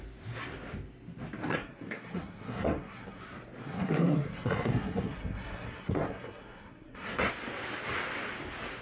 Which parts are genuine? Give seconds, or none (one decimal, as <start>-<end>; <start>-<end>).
0.0-1.4; 3.2-3.6; 7.3-8.8